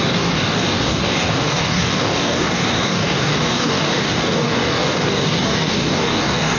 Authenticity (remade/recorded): remade